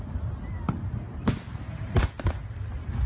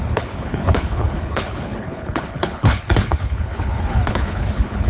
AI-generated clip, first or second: second